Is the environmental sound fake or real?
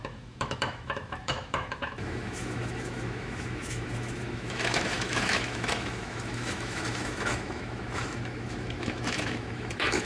fake